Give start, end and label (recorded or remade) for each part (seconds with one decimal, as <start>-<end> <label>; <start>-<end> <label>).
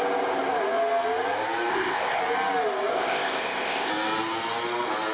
0.0-1.7 recorded; 1.7-2.2 remade; 2.2-2.9 recorded; 2.9-3.9 remade; 3.9-5.1 recorded